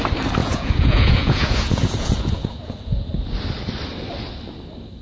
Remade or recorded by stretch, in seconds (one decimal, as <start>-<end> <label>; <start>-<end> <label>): 0.0-0.4 recorded; 0.4-3.1 remade; 3.1-5.0 recorded